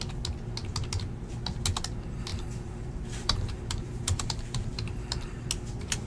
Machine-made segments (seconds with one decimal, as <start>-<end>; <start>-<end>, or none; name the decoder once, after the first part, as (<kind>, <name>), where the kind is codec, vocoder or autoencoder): 2.3-5.5 (vocoder, BigVGAN v2)